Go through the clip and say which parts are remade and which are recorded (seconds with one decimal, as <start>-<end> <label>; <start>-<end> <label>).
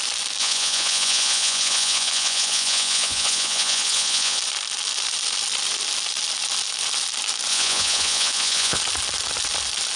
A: 0.0-0.4 recorded; 0.4-4.4 remade; 4.4-7.5 recorded; 7.5-8.8 remade; 8.8-10.0 recorded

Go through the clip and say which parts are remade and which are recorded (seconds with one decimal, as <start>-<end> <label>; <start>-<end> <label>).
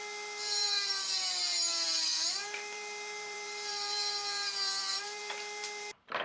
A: 0.0-6.2 remade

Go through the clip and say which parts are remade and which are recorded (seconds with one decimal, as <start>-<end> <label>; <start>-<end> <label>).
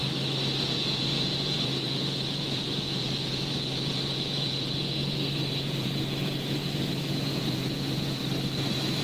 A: 0.0-0.6 recorded; 0.6-8.2 remade; 8.2-9.0 recorded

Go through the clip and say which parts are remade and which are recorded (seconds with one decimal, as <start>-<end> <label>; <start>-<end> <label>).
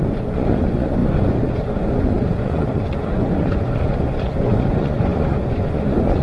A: 0.0-6.2 remade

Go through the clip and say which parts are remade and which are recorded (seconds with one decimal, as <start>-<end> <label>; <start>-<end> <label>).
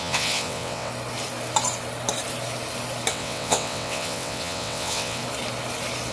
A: 0.0-0.9 remade; 0.9-3.1 recorded; 3.1-5.2 remade; 5.2-6.1 recorded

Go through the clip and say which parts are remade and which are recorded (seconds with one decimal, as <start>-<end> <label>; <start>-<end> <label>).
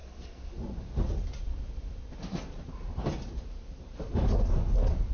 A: 0.0-0.5 remade; 0.5-5.1 recorded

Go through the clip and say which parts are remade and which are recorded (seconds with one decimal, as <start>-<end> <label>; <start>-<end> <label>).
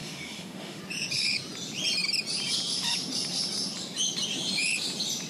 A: 0.0-0.8 remade; 0.8-5.3 recorded